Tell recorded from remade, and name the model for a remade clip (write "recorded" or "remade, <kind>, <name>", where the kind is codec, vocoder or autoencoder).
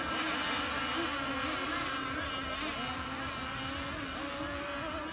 recorded